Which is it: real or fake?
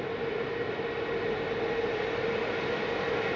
real